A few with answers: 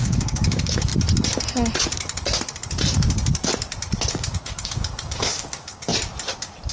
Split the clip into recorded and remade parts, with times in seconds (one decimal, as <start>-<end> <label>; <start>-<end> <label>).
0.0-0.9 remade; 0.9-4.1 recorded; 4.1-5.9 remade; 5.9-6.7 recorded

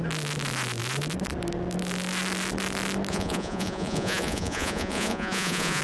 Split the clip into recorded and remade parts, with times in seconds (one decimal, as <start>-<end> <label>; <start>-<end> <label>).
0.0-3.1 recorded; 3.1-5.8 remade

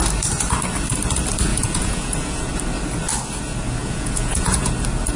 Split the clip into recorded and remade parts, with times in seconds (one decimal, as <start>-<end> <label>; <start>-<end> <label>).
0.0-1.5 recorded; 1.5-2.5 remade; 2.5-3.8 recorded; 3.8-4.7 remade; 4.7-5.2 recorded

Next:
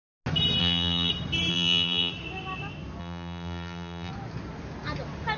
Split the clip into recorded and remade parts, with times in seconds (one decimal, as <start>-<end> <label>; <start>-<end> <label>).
0.0-0.6 recorded; 0.6-1.1 remade; 1.1-1.5 recorded; 1.5-2.1 remade; 2.1-3.0 recorded; 3.0-4.1 remade; 4.1-5.4 recorded

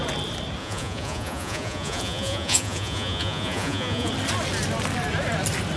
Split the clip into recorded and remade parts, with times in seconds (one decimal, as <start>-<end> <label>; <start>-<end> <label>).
0.0-0.6 recorded; 0.6-4.1 remade; 4.1-5.8 recorded